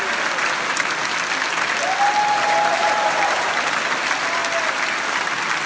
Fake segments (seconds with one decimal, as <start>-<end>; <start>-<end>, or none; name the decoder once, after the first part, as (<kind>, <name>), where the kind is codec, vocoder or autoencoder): 2.8-3.5 (vocoder, BigVGAN v2)